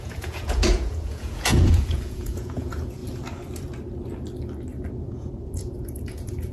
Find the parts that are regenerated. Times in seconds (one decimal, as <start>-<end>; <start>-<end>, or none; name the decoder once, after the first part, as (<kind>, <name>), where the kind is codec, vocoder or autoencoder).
0.0-3.0 (vocoder, Vocos); 5.1-6.5